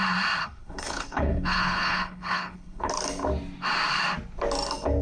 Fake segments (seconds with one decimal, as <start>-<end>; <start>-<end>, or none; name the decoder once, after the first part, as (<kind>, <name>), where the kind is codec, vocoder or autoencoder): 0.4-2.9 (codec, HILCodec)